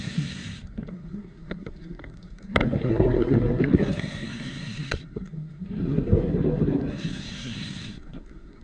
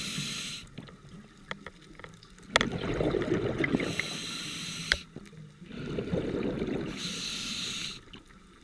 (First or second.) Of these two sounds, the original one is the second